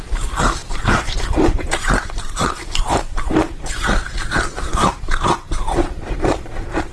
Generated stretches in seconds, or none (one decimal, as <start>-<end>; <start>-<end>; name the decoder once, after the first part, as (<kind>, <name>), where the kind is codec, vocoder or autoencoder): 0.0-4.0 (vocoder, BigVGAN v2); 4.6-6.9